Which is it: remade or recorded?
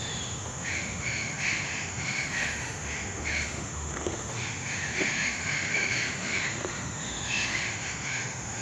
remade